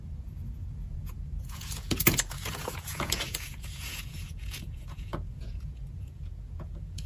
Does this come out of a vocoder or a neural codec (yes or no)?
yes